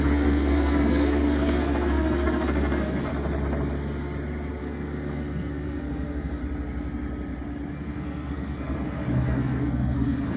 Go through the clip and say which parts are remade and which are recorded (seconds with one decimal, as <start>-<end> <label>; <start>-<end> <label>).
0.0-3.1 remade; 3.1-4.6 recorded; 4.6-6.4 remade; 6.4-7.7 recorded; 7.7-10.4 remade